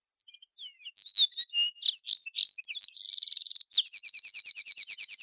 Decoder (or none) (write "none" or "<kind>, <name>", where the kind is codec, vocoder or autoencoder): none